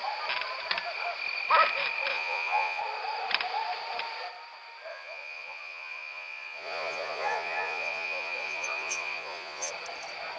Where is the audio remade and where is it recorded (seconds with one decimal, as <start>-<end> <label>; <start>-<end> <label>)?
0.0-2.1 recorded; 2.1-2.8 remade; 2.8-4.9 recorded; 4.9-9.7 remade; 9.7-10.4 recorded